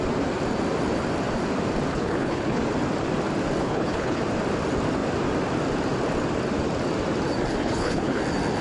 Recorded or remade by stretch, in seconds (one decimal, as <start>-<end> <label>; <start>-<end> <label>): 0.0-1.9 recorded; 1.9-2.6 remade; 2.6-3.6 recorded; 3.6-4.2 remade; 4.2-7.6 recorded; 7.6-8.2 remade; 8.2-8.6 recorded

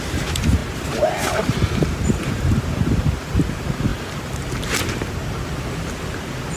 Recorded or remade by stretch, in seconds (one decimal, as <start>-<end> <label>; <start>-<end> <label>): 0.0-5.2 remade; 5.2-6.6 recorded

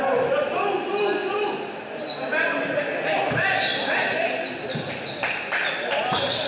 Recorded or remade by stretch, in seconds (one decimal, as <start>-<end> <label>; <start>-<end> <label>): 0.0-6.5 recorded

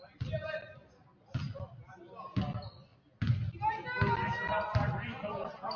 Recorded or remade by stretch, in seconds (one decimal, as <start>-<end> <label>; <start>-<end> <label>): 0.0-5.8 recorded

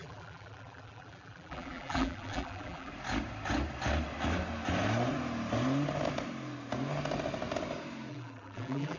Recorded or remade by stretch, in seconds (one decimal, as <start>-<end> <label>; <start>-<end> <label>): 0.0-2.9 remade; 2.9-8.1 recorded; 8.1-9.0 remade

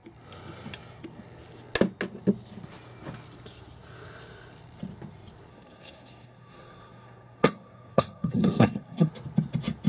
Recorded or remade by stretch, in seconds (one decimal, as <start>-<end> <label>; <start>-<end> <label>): 0.0-5.5 recorded; 5.5-9.1 remade; 9.1-9.9 recorded

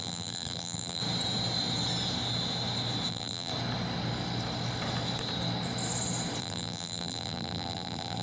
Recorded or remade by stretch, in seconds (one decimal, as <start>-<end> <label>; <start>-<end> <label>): 0.0-1.0 remade; 1.0-3.1 recorded; 3.1-3.5 remade; 3.5-6.4 recorded; 6.4-8.2 remade

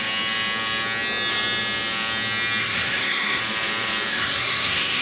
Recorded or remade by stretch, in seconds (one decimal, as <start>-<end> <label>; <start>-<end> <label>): 0.0-2.6 recorded; 2.6-3.4 remade; 3.4-4.1 recorded; 4.1-5.0 remade